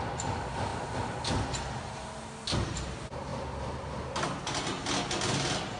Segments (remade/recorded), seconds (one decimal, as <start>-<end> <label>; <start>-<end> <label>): 0.0-5.8 recorded